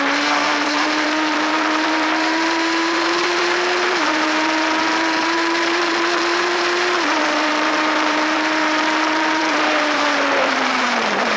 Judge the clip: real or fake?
fake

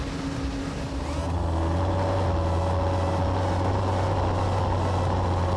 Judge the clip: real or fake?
real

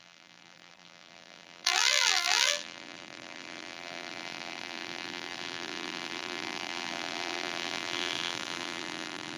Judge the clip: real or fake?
fake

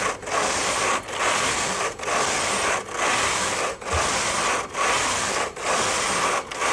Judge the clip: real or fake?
real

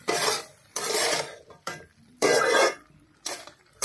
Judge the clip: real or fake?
fake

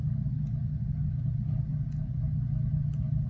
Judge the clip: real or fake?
real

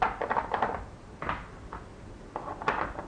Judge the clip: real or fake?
real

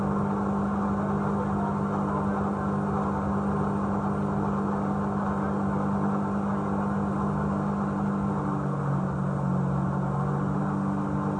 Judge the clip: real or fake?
real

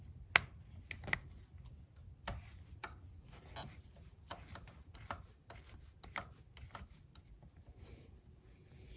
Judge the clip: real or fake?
real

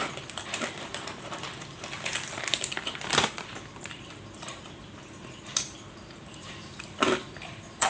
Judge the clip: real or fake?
fake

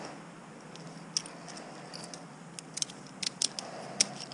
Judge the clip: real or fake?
real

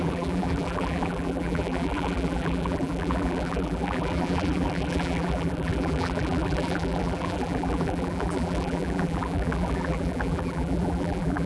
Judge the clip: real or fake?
fake